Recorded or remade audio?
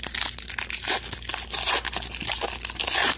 recorded